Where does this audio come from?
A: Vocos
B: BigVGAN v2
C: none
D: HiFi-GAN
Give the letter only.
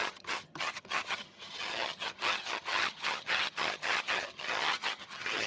D